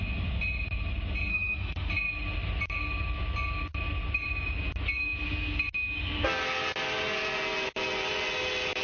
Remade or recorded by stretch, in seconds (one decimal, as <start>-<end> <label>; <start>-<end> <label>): 0.0-1.3 recorded; 1.3-1.9 remade; 1.9-8.8 recorded